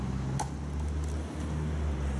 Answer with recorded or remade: recorded